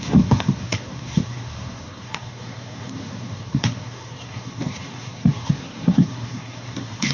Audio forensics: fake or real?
fake